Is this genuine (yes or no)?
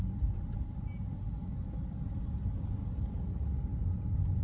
yes